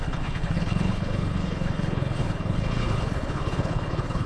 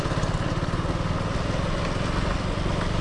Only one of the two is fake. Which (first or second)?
first